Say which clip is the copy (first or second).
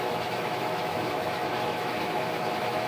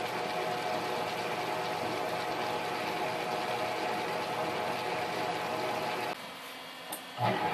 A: first